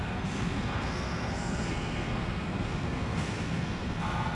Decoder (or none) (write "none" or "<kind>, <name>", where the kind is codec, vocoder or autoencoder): codec, SNAC